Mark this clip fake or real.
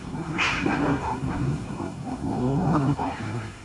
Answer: fake